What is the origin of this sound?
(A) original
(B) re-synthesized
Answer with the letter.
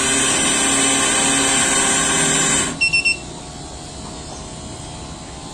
A